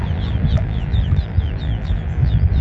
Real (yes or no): no